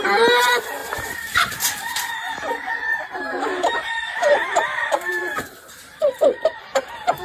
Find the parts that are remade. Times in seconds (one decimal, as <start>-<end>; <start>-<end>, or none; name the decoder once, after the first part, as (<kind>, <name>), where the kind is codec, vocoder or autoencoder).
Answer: 0.0-7.2 (vocoder, BigVGAN v2)